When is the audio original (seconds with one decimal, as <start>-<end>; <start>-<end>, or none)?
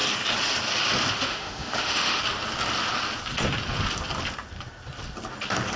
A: 0.0-1.3; 2.2-5.8